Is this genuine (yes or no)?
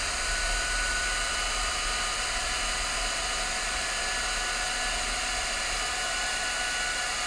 yes